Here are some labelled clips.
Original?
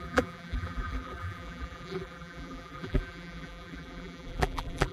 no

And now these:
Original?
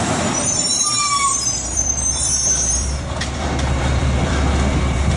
no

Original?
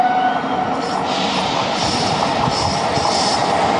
yes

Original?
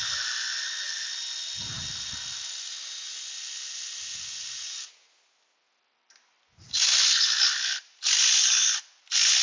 yes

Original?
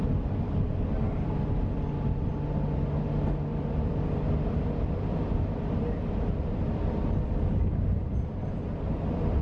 yes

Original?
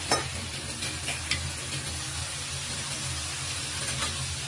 yes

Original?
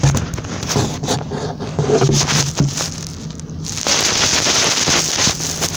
yes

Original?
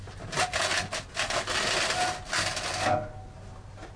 yes